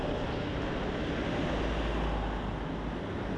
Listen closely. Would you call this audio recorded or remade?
recorded